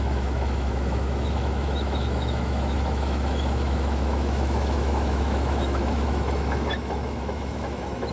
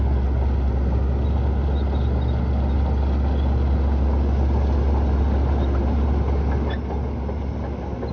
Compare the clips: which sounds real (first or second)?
second